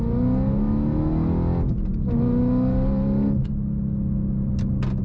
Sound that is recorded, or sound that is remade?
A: recorded